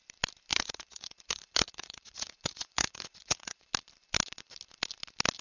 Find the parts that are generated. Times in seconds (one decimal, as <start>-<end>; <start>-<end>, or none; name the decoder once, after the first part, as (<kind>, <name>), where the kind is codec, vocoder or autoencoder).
0.5-3.7 (vocoder, Vocos)